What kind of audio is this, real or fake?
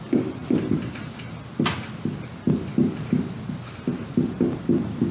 real